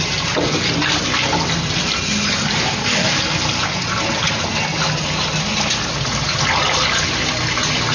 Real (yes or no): yes